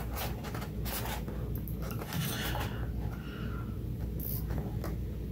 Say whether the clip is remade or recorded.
recorded